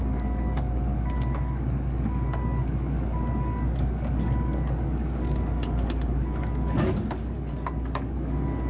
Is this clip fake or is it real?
fake